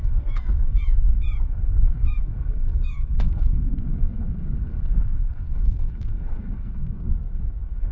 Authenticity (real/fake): fake